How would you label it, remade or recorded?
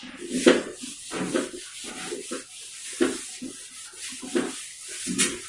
recorded